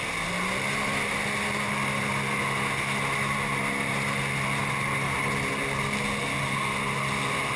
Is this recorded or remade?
recorded